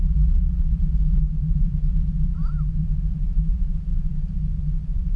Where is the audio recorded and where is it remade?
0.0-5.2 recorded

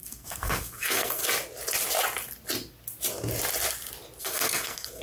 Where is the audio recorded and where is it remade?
0.0-1.2 remade; 1.2-4.2 recorded; 4.2-5.0 remade

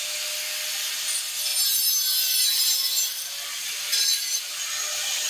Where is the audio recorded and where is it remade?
0.0-1.5 remade; 1.5-2.3 recorded; 2.3-5.3 remade